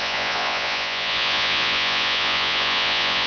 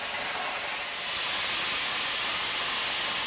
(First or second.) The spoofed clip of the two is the first